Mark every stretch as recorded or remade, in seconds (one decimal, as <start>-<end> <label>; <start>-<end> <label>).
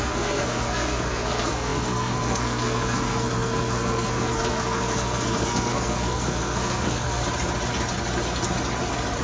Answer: 0.0-7.2 remade; 7.2-9.2 recorded